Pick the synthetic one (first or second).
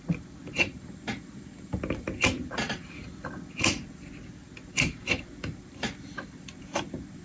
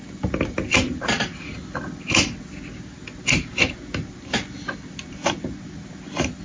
first